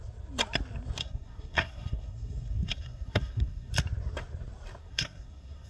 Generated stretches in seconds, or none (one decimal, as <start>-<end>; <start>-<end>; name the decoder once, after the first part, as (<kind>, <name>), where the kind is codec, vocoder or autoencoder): 1.0-3.7 (codec, SNAC); 4.8-5.7